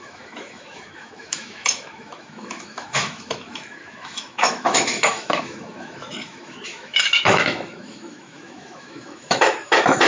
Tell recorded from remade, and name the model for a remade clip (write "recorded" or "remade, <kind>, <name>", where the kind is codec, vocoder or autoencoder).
remade, autoencoder, DAC-VAE